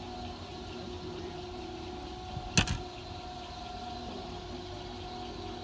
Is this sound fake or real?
real